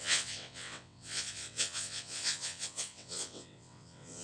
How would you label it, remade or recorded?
remade